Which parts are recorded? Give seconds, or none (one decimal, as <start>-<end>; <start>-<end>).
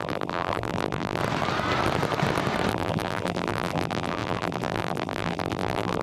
1.2-2.7